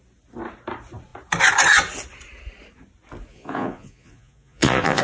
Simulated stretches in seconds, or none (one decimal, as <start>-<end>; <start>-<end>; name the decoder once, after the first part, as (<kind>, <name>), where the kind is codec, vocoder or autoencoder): 3.3-5.0 (vocoder, Vocos)